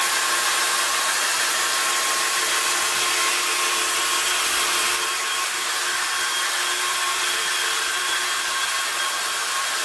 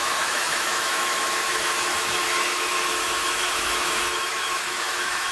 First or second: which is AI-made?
second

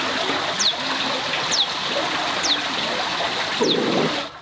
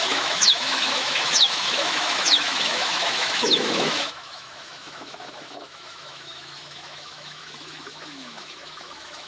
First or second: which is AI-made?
second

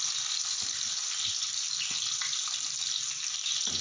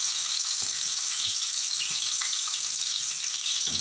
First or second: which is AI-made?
second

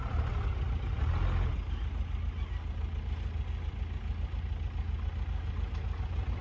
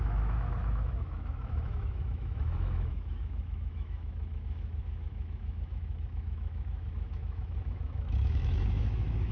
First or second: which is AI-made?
second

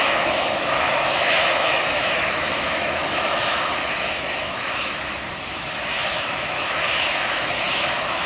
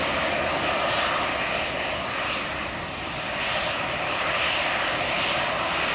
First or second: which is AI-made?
first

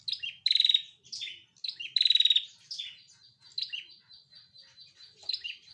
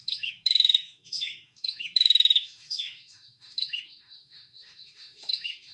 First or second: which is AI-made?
second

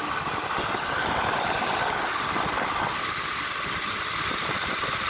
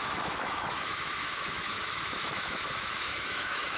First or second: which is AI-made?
second